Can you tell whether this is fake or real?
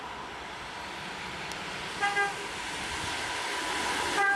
real